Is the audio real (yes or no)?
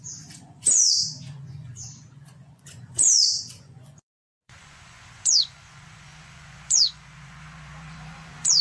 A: no